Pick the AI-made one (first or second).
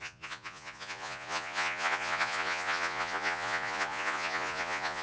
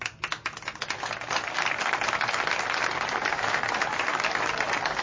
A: first